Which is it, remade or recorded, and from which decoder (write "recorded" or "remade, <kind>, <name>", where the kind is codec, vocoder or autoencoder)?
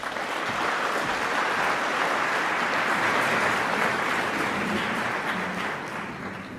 recorded